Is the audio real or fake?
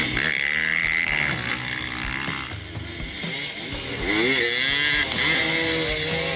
real